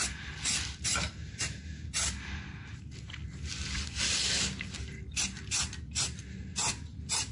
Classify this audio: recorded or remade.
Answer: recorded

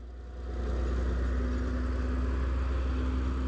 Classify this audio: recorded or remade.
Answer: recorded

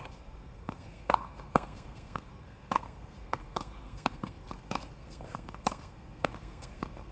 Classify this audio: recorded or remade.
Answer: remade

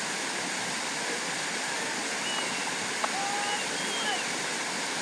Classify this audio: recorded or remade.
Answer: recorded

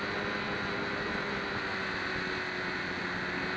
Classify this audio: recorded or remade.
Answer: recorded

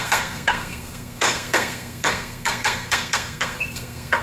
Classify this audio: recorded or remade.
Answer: remade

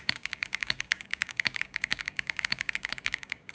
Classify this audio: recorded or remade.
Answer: remade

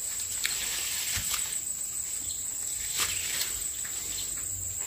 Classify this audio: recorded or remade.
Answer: recorded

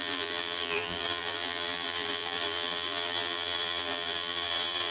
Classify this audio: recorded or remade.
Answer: remade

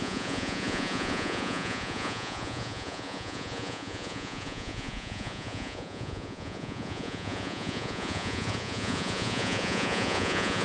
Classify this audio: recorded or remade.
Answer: remade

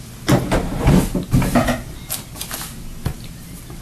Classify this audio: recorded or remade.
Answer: recorded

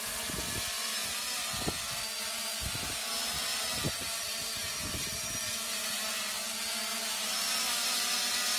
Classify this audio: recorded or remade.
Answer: recorded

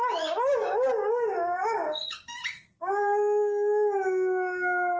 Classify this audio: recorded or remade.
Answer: remade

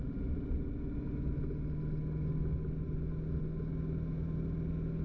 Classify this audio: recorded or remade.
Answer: recorded